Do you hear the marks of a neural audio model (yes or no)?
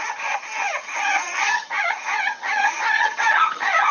yes